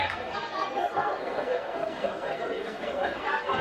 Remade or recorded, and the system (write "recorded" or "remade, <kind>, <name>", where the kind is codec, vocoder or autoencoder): remade, codec, SNAC